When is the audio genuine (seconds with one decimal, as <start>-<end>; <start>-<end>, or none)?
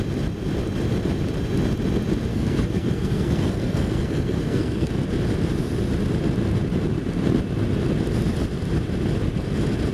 0.0-2.3; 4.9-9.9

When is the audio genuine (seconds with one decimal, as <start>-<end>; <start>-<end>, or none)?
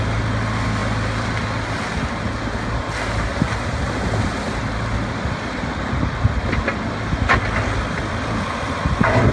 0.0-9.3